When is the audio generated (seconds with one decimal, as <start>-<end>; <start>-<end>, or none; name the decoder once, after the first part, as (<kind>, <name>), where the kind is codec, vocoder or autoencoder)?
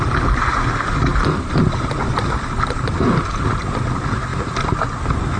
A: none